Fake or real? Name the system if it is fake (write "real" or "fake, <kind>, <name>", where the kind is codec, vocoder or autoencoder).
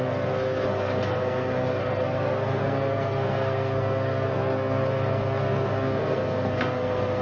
fake, codec, SNAC